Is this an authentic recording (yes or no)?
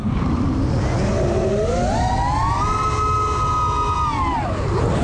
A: yes